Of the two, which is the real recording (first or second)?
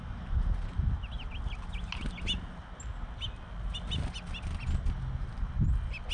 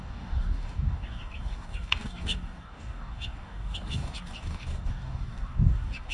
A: first